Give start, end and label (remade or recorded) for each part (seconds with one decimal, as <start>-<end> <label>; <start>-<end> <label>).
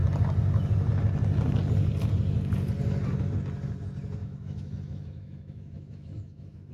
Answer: 0.0-4.2 recorded; 4.2-6.7 remade